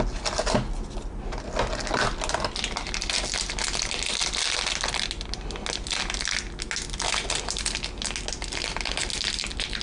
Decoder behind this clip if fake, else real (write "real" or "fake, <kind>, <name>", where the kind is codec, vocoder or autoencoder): real